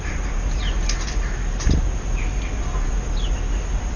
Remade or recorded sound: recorded